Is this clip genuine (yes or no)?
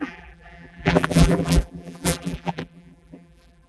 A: no